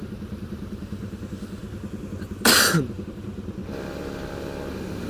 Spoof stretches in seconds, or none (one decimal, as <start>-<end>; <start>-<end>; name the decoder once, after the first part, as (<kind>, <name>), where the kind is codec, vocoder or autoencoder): 0.0-1.6 (vocoder, BigVGAN v2); 2.2-3.6